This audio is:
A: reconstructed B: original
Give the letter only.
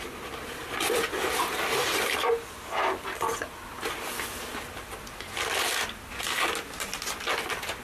B